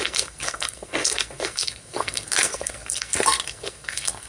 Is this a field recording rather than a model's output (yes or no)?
no